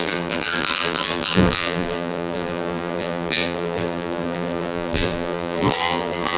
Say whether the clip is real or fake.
fake